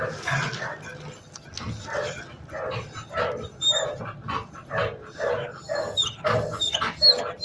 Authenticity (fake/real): real